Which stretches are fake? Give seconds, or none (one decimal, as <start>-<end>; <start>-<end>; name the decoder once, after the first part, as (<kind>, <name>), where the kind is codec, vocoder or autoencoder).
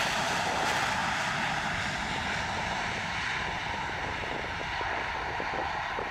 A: none